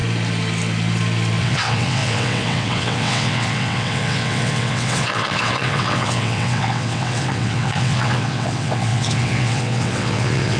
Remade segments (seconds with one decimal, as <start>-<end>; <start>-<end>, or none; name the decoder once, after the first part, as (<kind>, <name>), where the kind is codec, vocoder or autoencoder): 1.4-10.6 (vocoder, WaveNeXt)